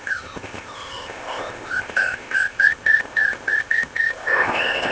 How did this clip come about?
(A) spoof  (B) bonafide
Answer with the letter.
A